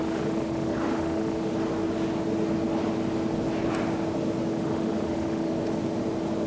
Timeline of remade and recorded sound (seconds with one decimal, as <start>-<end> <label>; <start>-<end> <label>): 0.0-1.5 remade; 1.5-4.5 recorded; 4.5-5.5 remade; 5.5-6.5 recorded